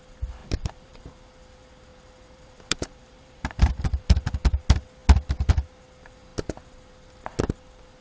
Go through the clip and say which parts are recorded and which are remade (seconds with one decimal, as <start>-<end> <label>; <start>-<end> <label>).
0.0-0.4 recorded; 0.4-1.1 remade; 1.1-1.9 recorded; 1.9-4.3 remade; 4.3-8.0 recorded